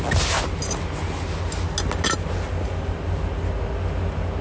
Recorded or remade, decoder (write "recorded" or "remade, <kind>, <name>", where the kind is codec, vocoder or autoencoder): recorded